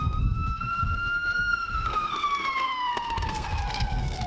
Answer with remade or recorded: remade